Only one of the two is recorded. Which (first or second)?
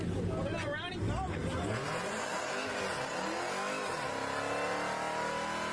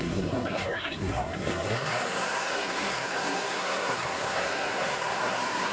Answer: first